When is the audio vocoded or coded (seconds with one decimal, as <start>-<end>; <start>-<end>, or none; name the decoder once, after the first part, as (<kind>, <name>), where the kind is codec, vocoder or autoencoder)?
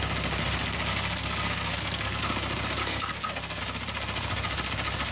0.9-2.2 (codec, SNAC); 2.8-3.6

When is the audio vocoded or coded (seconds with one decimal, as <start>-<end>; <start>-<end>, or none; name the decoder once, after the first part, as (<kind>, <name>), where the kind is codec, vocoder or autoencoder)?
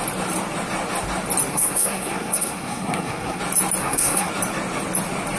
1.5-3.4 (codec, SNAC); 3.8-4.3